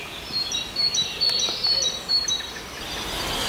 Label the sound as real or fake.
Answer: fake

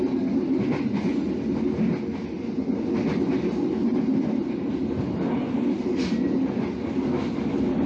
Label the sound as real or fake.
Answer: real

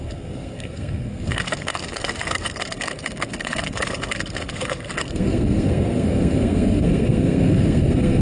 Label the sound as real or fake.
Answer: fake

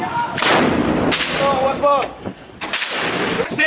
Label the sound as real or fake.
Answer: real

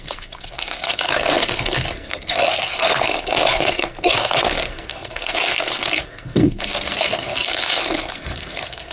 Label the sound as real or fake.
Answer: fake